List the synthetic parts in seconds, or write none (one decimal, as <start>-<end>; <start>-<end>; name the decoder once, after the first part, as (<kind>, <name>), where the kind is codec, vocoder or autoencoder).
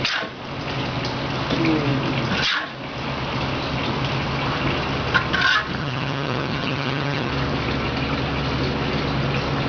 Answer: 5.8-7.3 (vocoder, HiFi-GAN)